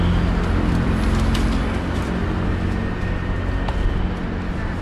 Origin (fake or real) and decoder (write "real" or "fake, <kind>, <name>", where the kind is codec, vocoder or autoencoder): real